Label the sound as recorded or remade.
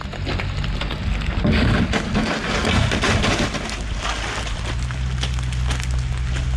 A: recorded